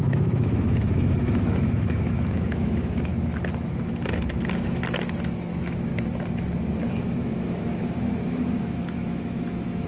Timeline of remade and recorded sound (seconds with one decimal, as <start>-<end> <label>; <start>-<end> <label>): 0.0-3.1 remade; 3.1-5.5 recorded; 5.5-5.9 remade; 5.9-6.9 recorded; 6.9-9.9 remade